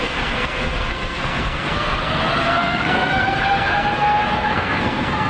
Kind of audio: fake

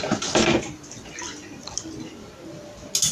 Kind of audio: real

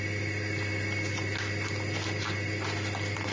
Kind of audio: real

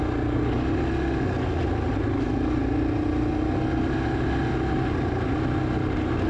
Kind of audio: real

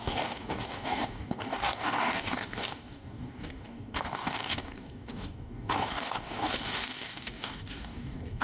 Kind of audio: fake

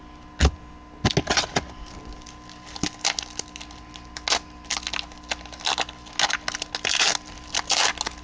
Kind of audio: real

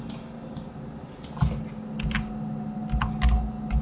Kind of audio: real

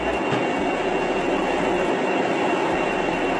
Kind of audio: real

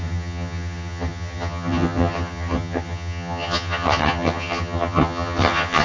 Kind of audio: fake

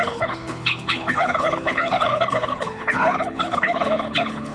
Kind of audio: fake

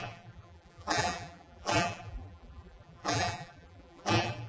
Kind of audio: fake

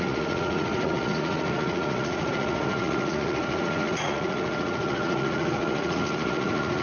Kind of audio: fake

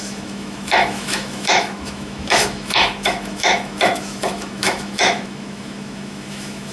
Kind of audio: fake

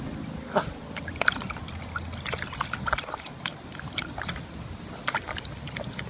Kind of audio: real